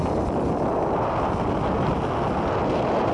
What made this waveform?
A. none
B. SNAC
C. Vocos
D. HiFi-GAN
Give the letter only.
A